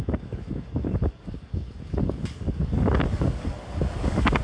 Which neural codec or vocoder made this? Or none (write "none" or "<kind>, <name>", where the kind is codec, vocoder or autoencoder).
codec, DAC